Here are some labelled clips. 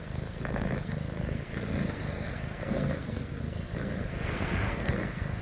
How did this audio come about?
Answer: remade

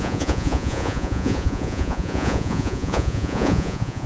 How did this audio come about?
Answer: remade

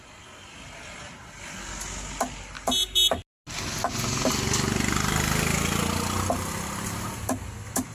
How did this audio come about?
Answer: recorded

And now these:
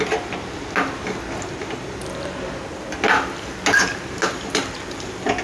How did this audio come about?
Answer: recorded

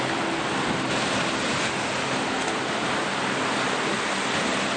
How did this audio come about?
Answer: recorded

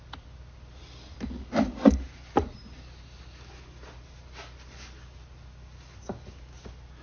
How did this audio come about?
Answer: recorded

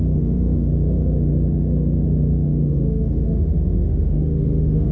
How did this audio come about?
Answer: remade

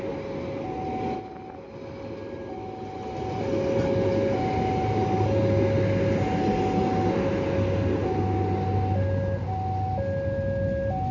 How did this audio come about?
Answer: recorded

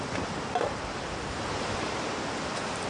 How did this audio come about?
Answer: remade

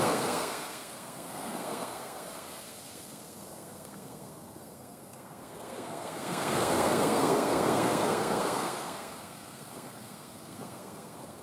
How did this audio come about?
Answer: remade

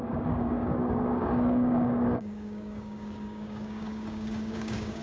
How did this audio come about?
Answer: remade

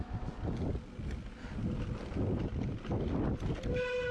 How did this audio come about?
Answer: recorded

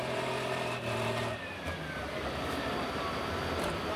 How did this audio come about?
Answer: remade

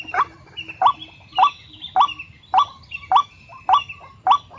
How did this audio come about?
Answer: recorded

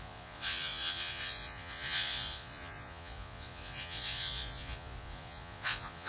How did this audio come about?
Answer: remade